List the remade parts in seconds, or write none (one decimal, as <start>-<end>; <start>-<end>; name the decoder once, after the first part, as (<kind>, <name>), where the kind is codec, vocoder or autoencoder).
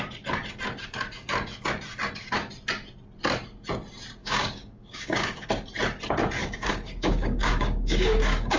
4.2-5.5 (codec, DAC); 6.4-8.6